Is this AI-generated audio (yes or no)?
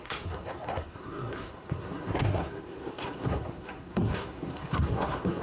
yes